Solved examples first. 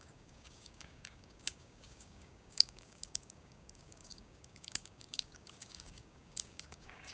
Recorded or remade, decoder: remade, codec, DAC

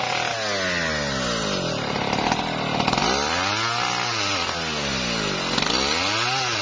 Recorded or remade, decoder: recorded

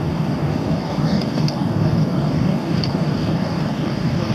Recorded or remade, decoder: remade, codec, DAC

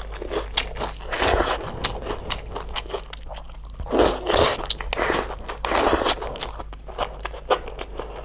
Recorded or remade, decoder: recorded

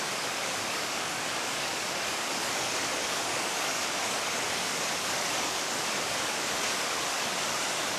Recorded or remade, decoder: remade, codec, DAC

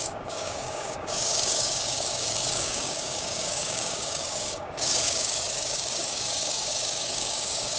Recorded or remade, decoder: remade, codec, DAC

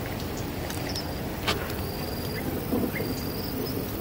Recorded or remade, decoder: recorded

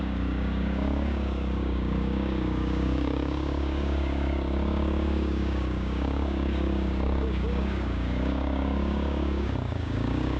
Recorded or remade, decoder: remade, codec, DAC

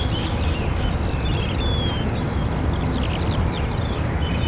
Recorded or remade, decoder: recorded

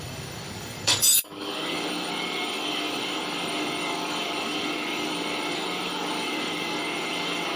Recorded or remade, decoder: remade, codec, DAC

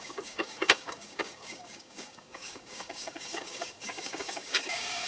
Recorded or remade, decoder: remade, codec, DAC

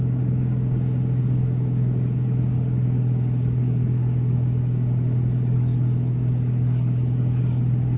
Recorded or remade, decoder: remade, codec, DAC